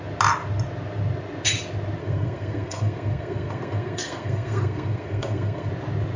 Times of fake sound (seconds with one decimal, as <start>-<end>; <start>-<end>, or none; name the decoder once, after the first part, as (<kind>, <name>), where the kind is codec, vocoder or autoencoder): 2.0-5.7 (codec, SNAC)